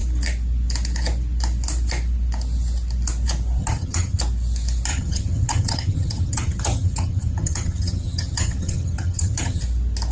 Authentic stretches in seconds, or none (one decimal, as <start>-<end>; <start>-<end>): 0.0-3.6; 4.2-4.9; 9.6-10.1